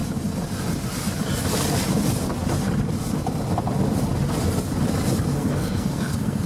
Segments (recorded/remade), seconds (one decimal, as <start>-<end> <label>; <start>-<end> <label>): 0.0-5.3 recorded; 5.3-6.5 remade